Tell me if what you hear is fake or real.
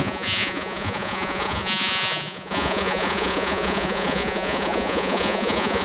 fake